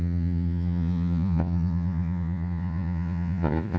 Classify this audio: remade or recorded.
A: remade